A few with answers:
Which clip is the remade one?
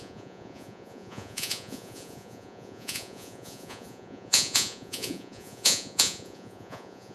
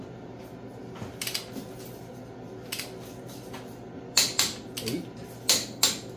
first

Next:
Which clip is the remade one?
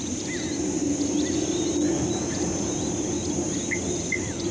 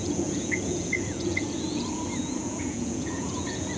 second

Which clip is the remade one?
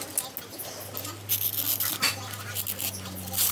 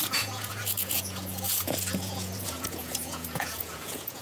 second